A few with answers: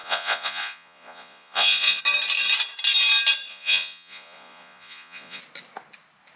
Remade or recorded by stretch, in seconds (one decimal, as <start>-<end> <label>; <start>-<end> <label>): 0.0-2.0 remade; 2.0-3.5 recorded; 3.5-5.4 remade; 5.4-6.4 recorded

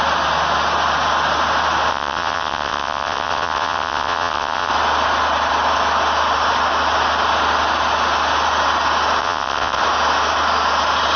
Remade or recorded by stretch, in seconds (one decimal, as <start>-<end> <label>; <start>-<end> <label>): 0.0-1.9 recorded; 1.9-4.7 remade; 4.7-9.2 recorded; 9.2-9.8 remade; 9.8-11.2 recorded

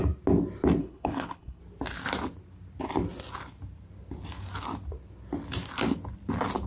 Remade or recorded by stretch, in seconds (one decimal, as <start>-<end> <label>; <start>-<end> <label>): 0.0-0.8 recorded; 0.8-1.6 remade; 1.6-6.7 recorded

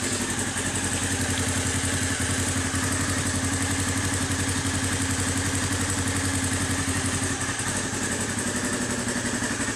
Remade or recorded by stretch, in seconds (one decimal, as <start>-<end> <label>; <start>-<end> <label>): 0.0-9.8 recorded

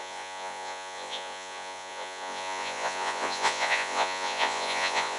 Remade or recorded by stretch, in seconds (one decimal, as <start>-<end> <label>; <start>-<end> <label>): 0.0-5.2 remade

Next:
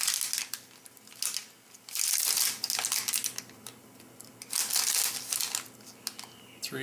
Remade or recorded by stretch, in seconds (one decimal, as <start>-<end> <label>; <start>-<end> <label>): 0.0-6.8 recorded